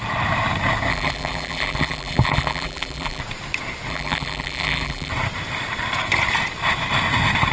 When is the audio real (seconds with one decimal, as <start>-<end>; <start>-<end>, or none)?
0.0-0.9; 3.2-3.9; 5.1-7.5